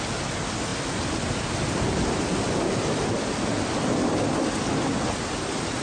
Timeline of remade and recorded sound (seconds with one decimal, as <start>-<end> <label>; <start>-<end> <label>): 0.0-5.8 recorded